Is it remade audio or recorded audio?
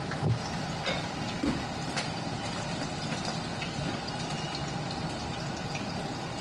recorded